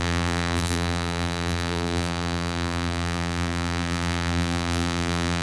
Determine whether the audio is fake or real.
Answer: fake